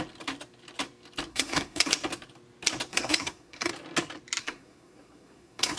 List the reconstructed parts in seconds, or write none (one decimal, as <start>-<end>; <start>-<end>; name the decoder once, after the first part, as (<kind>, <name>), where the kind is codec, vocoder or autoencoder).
1.3-1.9 (codec, SNAC); 2.9-3.7; 4.4-5.8